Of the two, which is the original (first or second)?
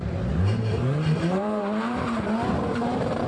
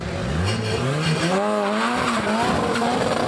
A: second